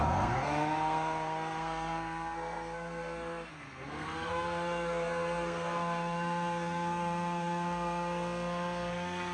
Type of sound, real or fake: fake